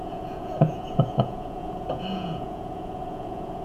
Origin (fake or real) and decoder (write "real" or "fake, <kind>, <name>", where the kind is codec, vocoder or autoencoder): fake, vocoder, Vocos